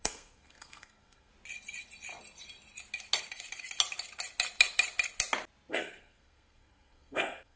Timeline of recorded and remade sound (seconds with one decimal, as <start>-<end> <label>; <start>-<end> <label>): 0.0-1.3 remade; 1.3-5.7 recorded; 5.7-7.6 remade